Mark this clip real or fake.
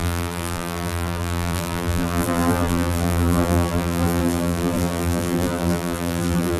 fake